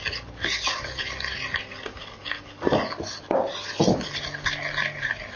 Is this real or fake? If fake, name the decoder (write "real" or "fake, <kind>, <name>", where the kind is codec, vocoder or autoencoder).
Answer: real